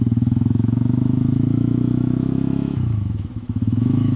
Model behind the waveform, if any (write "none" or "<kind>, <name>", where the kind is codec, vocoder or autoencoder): autoencoder, DAC-VAE